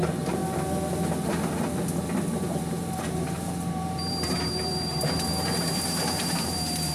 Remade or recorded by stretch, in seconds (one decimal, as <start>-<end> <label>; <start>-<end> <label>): 0.0-0.4 remade; 0.4-2.6 recorded; 2.6-6.9 remade